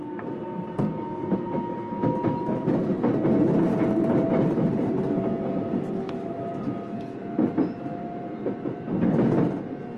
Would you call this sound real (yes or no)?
yes